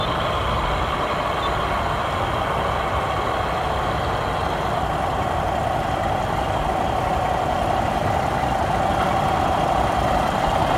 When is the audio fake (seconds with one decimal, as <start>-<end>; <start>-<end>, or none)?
none